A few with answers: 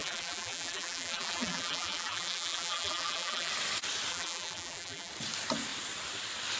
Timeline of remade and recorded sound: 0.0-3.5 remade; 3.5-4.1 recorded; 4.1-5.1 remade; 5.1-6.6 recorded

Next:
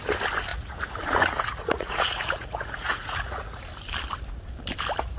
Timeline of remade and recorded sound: 0.0-0.5 recorded; 0.5-3.6 remade; 3.6-5.2 recorded

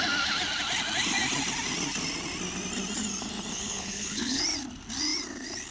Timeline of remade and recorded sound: 0.0-3.5 recorded; 3.5-4.4 remade; 4.4-5.7 recorded